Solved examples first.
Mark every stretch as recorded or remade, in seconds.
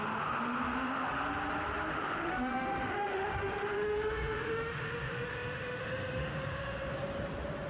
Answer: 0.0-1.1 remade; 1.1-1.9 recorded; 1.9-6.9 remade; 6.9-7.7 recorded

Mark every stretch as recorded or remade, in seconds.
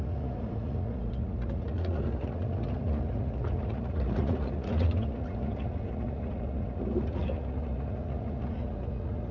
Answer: 0.0-9.3 remade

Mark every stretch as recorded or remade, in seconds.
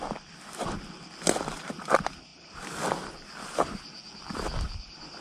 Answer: 0.0-5.2 recorded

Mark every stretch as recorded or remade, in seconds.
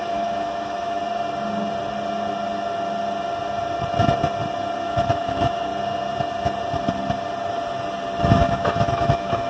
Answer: 0.0-1.0 remade; 1.0-4.8 recorded; 4.8-5.7 remade; 5.7-8.2 recorded; 8.2-9.5 remade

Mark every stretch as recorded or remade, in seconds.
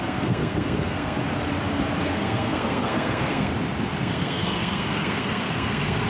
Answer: 0.0-1.2 remade; 1.2-2.0 recorded; 2.0-3.5 remade; 3.5-4.0 recorded; 4.0-6.1 remade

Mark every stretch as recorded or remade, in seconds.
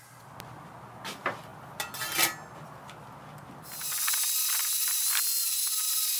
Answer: 0.0-6.2 recorded